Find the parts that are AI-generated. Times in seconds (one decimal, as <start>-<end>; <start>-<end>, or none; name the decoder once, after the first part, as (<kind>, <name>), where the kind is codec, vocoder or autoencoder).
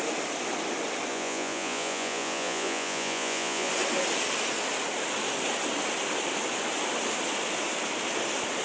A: 1.1-3.7 (vocoder, Vocos)